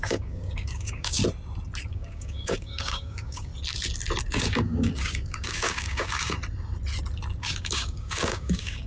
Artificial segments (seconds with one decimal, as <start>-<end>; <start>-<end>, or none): 0.0-1.2; 1.9-3.5; 4.3-6.4; 7.4-8.9